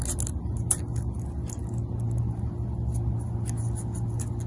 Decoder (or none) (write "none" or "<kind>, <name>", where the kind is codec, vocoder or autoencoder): none